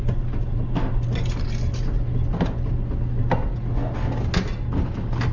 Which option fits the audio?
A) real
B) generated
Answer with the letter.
A